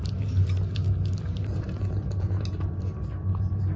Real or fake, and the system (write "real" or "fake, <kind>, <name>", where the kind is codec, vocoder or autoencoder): real